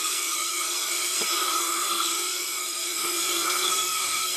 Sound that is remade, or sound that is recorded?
remade